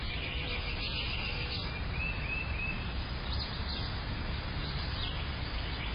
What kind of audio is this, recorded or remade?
recorded